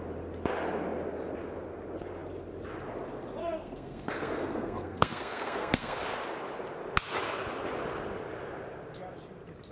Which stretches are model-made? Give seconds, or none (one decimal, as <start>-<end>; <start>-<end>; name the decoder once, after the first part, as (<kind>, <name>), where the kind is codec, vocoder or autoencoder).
3.4-6.0 (codec, SNAC)